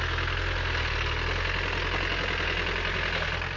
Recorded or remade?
recorded